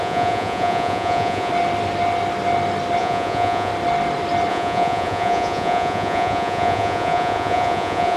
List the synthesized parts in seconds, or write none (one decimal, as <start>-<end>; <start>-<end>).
0.0-1.5; 3.0-3.7; 4.5-8.2